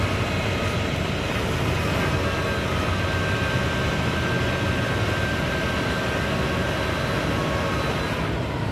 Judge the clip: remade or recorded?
recorded